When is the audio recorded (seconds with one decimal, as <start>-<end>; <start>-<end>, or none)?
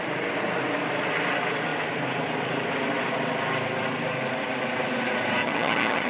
0.0-5.4